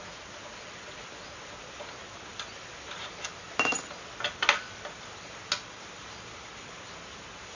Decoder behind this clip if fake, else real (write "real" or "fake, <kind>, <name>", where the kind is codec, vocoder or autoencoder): real